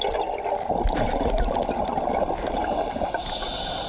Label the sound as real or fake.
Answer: real